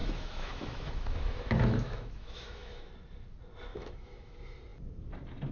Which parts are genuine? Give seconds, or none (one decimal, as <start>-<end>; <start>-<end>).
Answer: 2.9-3.7; 4.3-5.5